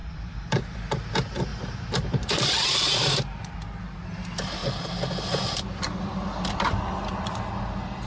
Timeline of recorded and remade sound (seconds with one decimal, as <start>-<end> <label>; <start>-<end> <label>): 0.0-0.6 remade; 0.6-1.5 recorded; 1.5-3.5 remade; 3.5-8.1 recorded